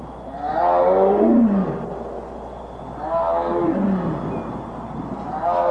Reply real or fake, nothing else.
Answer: real